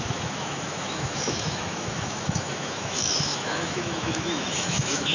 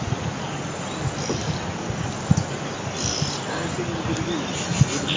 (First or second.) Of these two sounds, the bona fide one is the second